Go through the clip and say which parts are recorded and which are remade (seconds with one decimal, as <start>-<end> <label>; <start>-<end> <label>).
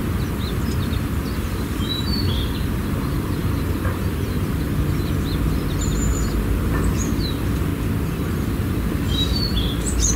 0.0-7.7 remade; 7.7-8.3 recorded; 8.3-10.2 remade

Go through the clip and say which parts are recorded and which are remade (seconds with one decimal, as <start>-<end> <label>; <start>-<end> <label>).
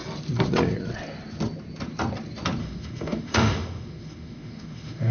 0.0-2.6 recorded; 2.6-5.1 remade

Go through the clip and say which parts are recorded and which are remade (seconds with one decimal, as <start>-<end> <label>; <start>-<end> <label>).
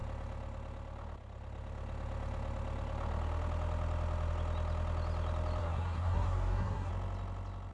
0.0-5.6 recorded; 5.6-6.9 remade; 6.9-7.7 recorded